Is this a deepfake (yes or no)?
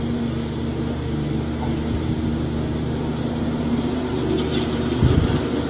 no